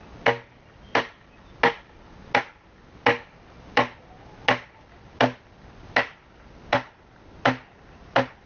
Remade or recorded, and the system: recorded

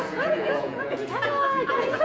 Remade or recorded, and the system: remade, vocoder, Vocos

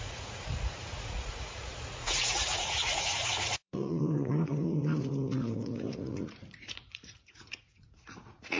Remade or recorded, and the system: remade, vocoder, Vocos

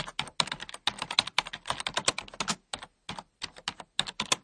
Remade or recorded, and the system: recorded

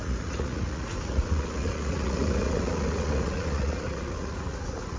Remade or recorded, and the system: remade, vocoder, Vocos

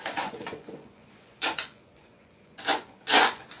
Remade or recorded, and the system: remade, vocoder, Vocos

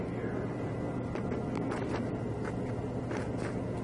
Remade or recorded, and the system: recorded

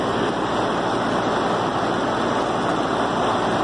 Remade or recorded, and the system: recorded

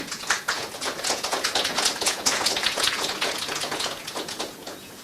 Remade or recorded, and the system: remade, vocoder, Vocos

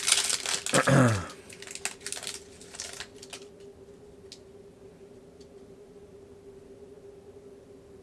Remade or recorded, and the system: recorded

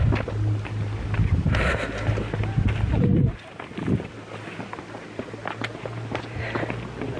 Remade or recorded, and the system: recorded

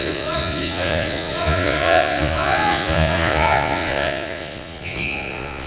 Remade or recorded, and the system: remade, vocoder, Vocos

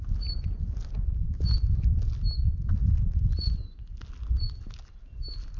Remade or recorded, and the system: recorded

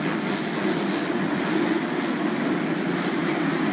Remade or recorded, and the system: recorded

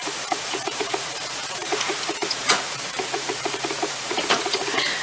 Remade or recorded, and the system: remade, vocoder, Vocos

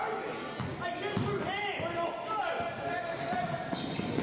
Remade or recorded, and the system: recorded